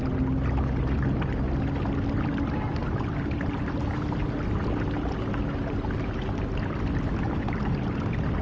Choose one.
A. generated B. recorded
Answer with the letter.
B